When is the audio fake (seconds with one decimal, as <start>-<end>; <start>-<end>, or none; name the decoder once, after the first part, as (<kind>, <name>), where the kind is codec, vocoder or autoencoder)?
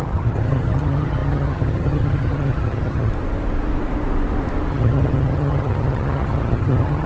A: 0.0-3.1 (vocoder, HiFi-GAN); 4.7-7.1